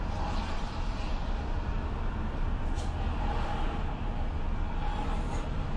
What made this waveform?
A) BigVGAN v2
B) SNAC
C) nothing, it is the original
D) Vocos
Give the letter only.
C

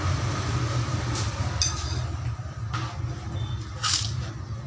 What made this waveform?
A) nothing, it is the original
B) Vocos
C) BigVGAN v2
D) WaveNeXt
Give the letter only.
A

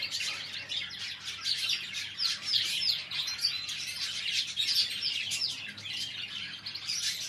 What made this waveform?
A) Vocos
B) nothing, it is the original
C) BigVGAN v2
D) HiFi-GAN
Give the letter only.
B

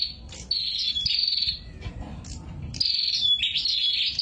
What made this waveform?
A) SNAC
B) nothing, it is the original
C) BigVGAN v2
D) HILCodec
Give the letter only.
B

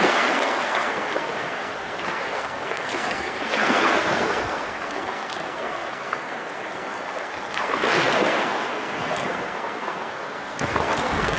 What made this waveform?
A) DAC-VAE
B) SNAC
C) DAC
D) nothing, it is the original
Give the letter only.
B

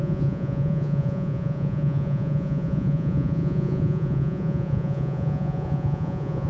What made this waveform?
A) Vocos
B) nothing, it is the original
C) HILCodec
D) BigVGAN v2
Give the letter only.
A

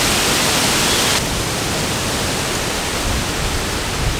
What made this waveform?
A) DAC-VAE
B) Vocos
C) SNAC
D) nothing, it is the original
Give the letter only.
D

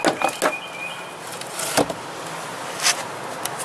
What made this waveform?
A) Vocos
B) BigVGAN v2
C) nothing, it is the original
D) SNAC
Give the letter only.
C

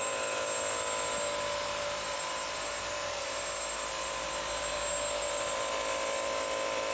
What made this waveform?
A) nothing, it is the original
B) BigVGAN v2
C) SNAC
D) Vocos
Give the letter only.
B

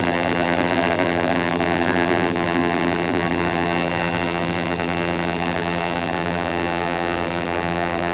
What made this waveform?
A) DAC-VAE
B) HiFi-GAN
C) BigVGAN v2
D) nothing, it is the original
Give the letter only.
C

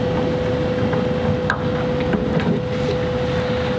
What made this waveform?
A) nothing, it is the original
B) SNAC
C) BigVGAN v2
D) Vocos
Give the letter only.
A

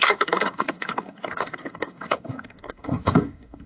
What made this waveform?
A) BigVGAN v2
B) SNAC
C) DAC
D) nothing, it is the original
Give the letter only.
B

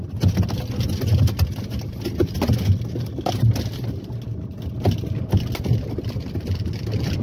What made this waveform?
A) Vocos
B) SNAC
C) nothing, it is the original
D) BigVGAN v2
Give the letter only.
C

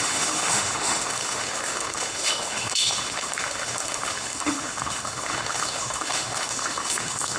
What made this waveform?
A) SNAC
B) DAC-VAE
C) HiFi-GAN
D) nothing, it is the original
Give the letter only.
B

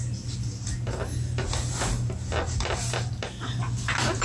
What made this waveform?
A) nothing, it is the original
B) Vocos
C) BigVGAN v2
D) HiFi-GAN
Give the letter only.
A